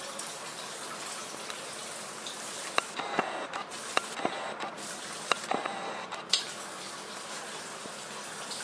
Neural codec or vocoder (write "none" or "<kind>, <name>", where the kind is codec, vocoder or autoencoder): vocoder, BigVGAN v2